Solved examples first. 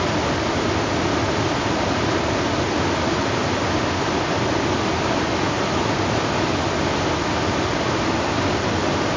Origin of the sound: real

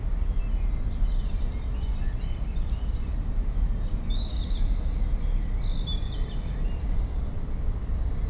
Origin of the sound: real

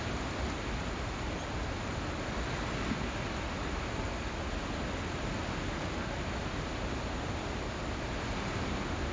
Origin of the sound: real